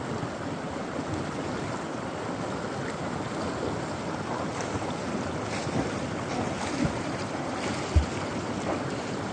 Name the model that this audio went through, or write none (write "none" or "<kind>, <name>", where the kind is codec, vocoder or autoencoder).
none